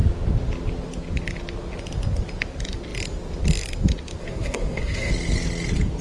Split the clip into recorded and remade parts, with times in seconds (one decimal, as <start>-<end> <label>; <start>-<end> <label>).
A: 0.0-4.2 recorded; 4.2-5.1 remade; 5.1-6.0 recorded